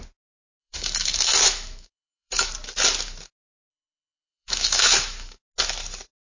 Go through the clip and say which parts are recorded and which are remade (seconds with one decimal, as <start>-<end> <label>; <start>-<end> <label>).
0.0-0.6 recorded; 0.6-2.5 remade; 2.5-3.7 recorded; 3.7-5.4 remade; 5.4-6.4 recorded